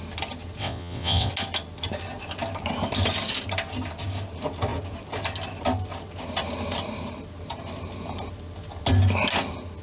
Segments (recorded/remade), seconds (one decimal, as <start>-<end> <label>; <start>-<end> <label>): 0.0-0.6 recorded; 0.6-1.3 remade; 1.3-9.8 recorded